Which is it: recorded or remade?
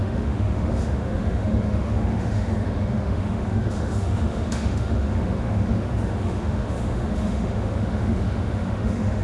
remade